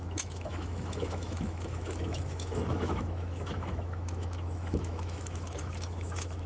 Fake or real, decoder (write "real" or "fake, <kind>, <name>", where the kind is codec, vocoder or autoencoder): fake, autoencoder, DAC-VAE